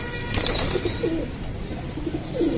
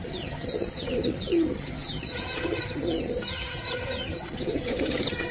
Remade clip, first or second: second